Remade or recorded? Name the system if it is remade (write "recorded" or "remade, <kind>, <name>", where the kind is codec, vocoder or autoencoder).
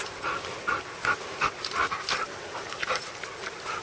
recorded